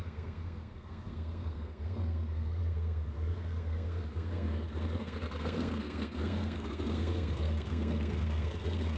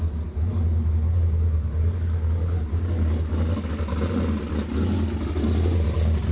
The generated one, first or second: first